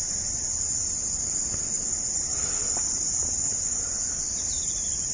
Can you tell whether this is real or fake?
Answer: real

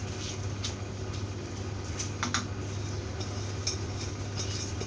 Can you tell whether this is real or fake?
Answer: real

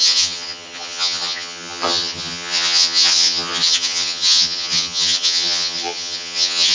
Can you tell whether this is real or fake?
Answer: fake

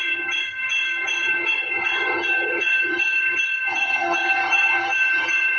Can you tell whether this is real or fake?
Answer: fake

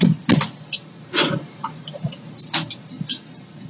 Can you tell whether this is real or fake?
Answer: real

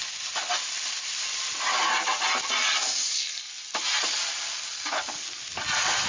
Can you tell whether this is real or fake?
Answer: real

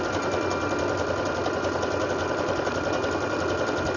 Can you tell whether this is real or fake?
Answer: real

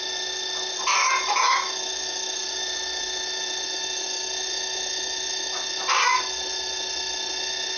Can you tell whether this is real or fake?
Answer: real